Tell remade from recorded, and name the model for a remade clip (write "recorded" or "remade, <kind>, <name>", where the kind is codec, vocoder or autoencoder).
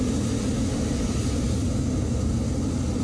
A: recorded